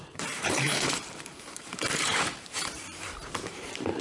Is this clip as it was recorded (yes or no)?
no